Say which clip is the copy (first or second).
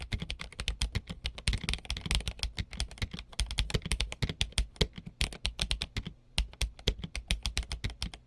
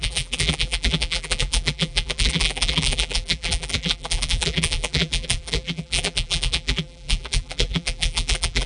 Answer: second